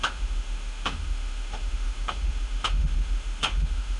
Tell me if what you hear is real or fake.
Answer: fake